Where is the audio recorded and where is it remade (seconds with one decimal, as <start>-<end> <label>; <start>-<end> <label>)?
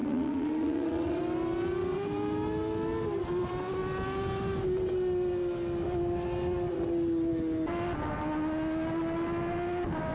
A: 0.0-1.2 remade; 1.2-10.1 recorded